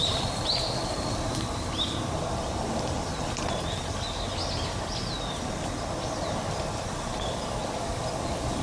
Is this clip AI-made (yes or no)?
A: no